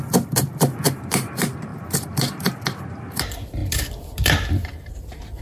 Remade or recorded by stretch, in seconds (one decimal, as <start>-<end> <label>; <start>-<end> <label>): 0.0-5.4 recorded